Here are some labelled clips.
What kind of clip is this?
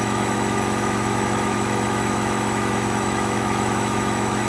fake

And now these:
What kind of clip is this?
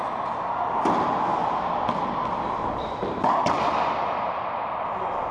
real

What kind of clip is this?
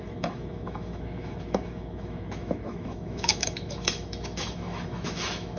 fake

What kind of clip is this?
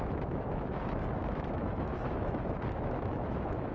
fake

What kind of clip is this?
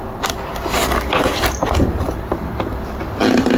real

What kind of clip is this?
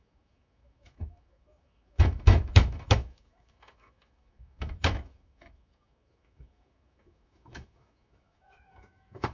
fake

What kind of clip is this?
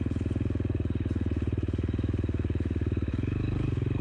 real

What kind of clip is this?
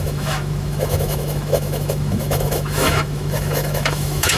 fake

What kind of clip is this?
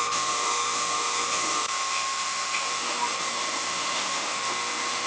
fake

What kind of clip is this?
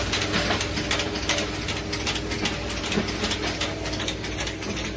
real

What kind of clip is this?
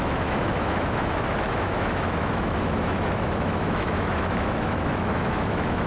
fake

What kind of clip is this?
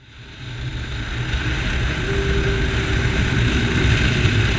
real